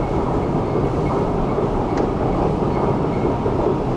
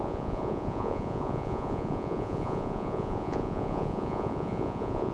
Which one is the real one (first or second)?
first